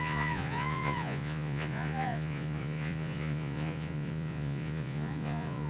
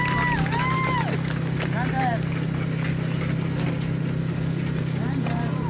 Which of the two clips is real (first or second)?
second